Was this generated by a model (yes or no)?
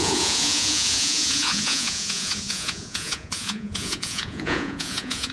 yes